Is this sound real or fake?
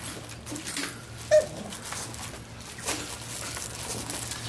real